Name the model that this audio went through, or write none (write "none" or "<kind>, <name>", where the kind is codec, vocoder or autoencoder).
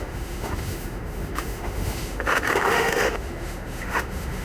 autoencoder, DAC-VAE